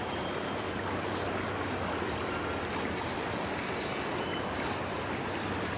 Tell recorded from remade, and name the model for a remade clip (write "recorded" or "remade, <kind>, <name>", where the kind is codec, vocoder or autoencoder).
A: recorded